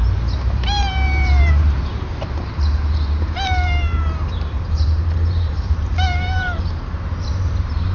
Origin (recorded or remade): remade